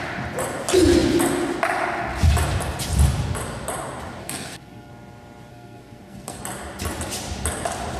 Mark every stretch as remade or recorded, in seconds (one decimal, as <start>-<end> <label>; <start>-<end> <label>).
0.0-4.2 recorded; 4.2-4.9 remade; 4.9-5.5 recorded; 5.5-6.4 remade; 6.4-8.0 recorded